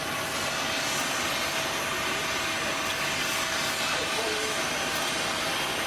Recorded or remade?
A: recorded